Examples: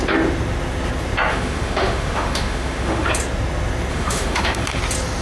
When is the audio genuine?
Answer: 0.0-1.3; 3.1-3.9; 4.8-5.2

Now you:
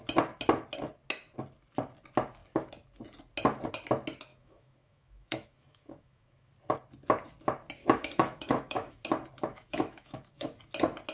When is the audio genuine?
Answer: 0.0-4.3; 6.5-7.8; 9.0-9.5; 10.6-11.1

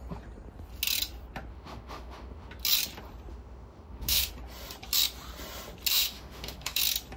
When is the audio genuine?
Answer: 0.0-1.5; 2.5-3.3; 4.3-5.9; 6.8-7.2

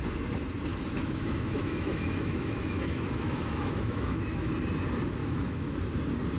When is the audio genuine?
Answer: 0.0-0.7; 4.5-5.2; 5.8-6.4

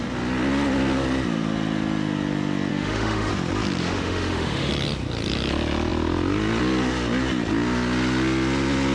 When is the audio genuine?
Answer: 0.0-2.7; 3.3-3.8; 4.7-8.9